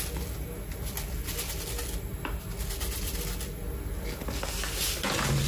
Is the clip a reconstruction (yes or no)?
no